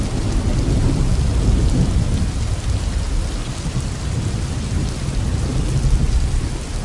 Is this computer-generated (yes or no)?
no